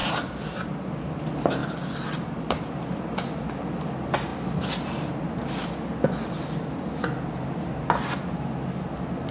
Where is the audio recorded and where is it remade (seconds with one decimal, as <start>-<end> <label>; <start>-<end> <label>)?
0.0-0.9 remade; 0.9-1.6 recorded; 1.6-3.5 remade; 3.5-9.3 recorded